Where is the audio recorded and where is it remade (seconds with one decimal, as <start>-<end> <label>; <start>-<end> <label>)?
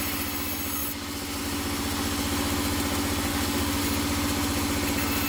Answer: 0.0-3.3 recorded; 3.3-3.8 remade; 3.8-5.3 recorded